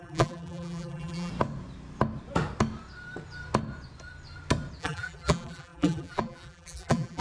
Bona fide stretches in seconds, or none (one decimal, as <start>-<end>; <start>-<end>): 1.3-4.8